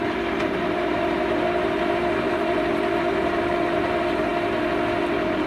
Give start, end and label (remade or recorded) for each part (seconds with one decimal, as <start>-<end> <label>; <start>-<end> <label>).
0.0-4.3 remade; 4.3-5.1 recorded; 5.1-5.5 remade